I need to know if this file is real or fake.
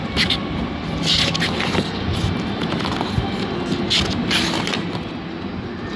real